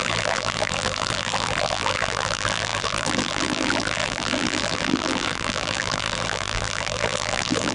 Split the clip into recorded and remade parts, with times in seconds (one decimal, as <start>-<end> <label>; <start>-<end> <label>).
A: 0.0-7.7 remade